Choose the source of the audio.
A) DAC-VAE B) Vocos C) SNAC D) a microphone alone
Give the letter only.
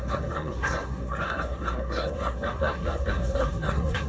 C